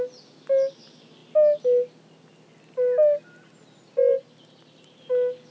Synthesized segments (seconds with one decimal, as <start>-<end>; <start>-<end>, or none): 4.1-5.0